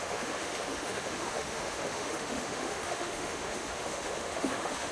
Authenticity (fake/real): fake